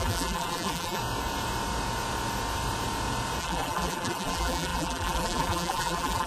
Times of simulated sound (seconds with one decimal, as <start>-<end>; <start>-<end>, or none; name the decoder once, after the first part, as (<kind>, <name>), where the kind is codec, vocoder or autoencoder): 0.0-1.0 (vocoder, BigVGAN v2); 3.4-6.3